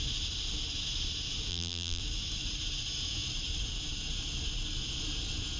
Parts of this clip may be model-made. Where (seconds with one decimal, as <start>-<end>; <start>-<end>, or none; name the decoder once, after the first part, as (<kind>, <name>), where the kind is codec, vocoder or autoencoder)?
1.5-2.0 (vocoder, BigVGAN v2)